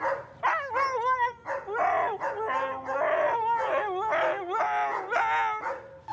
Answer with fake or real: real